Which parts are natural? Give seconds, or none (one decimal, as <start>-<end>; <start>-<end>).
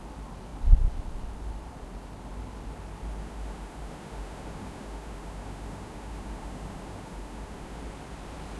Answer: 0.0-3.2; 7.8-8.6